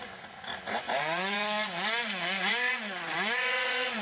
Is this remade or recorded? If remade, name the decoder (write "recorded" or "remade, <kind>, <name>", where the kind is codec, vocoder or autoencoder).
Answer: remade, vocoder, Vocos